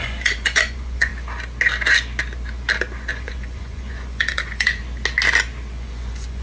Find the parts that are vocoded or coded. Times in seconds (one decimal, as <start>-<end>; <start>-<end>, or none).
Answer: 0.0-1.1; 3.1-4.8; 5.7-6.4